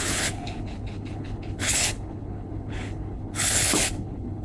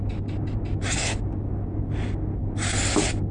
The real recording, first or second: second